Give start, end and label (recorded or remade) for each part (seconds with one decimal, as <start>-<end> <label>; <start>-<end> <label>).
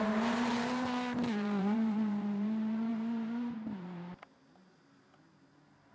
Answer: 0.0-2.9 remade; 2.9-5.9 recorded